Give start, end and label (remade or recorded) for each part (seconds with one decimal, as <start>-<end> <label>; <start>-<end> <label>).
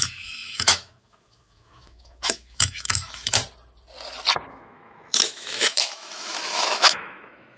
0.0-3.4 remade; 3.4-4.5 recorded; 4.5-7.6 remade